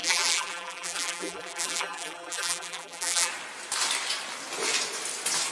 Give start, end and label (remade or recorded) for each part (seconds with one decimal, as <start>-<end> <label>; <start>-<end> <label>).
0.0-3.3 remade; 3.3-5.5 recorded